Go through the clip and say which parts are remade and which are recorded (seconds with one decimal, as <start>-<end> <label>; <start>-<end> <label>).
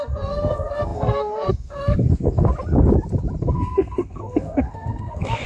0.0-2.5 remade; 2.5-3.4 recorded; 3.4-5.5 remade